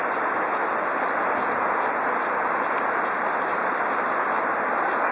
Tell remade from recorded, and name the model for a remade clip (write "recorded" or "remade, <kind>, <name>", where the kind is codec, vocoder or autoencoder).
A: recorded